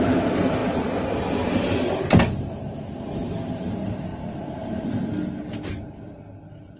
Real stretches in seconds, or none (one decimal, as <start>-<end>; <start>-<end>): 0.0-6.8